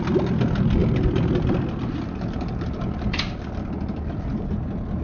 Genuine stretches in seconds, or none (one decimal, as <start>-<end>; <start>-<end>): 0.0-5.0